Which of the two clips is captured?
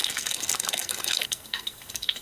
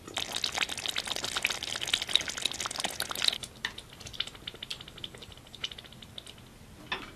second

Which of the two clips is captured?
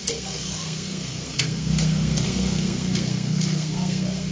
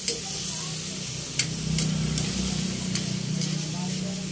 second